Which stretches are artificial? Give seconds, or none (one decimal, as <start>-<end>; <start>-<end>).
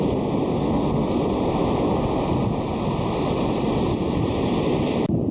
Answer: 0.6-1.2